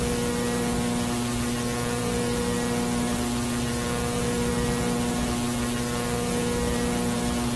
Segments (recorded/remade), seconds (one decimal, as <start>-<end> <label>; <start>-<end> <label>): 0.0-7.6 recorded